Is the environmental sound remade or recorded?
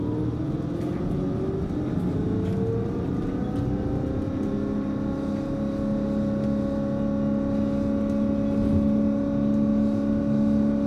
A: recorded